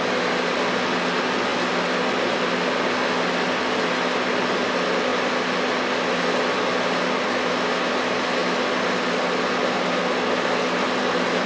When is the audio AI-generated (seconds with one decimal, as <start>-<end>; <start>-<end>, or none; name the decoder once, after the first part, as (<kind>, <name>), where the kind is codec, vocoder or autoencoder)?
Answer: none